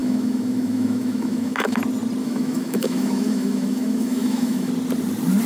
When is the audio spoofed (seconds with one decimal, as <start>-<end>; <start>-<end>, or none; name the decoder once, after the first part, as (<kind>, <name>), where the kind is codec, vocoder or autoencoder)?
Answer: 0.0-1.8 (autoencoder, DAC-VAE); 2.2-4.7